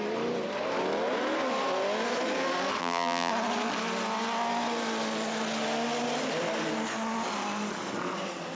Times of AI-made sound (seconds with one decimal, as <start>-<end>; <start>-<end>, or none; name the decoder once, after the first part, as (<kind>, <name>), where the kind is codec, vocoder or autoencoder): 2.8-3.3 (vocoder, BigVGAN v2)